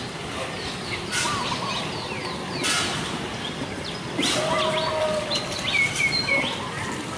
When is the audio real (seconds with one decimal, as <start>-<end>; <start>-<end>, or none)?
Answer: 0.0-7.2